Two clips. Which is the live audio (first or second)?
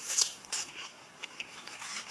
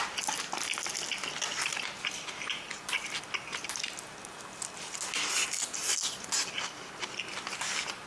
second